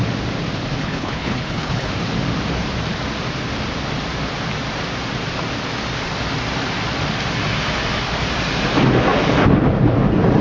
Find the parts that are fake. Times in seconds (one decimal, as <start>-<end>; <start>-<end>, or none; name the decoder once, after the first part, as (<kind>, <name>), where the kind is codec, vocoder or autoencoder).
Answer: 0.8-1.9 (codec, HILCodec)